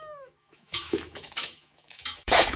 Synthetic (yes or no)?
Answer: yes